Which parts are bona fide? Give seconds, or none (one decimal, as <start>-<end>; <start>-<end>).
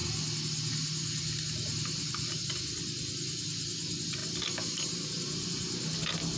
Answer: 0.0-6.4